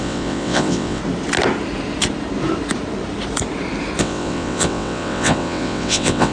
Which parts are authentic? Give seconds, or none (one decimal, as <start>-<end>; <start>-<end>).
1.0-4.0